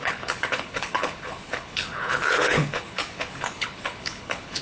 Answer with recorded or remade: remade